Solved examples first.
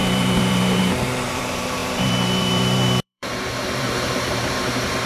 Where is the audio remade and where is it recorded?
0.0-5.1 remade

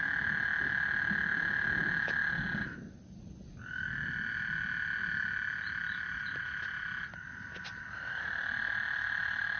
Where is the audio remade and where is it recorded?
0.0-9.6 recorded

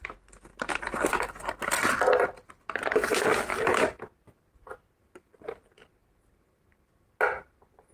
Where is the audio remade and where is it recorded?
0.0-0.5 recorded; 0.5-3.1 remade; 3.1-7.9 recorded